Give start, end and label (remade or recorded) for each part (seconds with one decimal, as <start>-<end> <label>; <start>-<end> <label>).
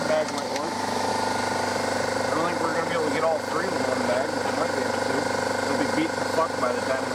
0.0-0.5 recorded; 0.5-1.1 remade; 1.1-7.1 recorded